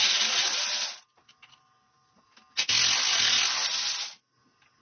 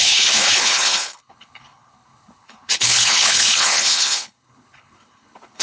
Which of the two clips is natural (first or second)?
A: first